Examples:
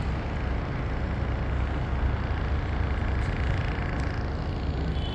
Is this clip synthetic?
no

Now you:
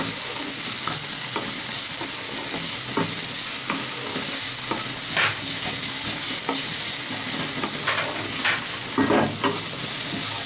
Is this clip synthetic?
no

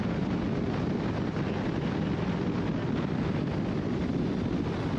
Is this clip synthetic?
no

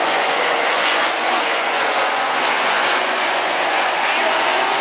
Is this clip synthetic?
yes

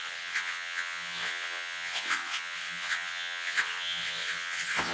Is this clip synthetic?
yes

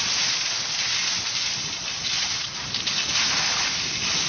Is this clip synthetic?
no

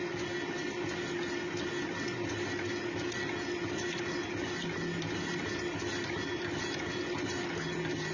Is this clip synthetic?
no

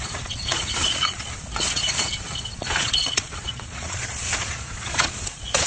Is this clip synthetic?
yes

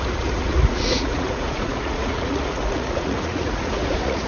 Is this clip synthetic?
yes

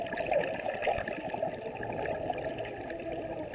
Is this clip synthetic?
no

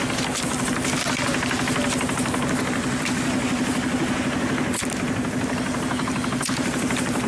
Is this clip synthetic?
no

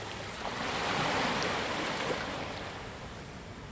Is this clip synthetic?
no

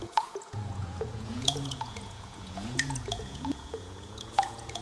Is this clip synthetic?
yes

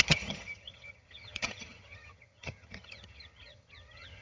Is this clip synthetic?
yes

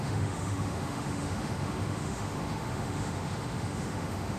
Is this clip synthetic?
yes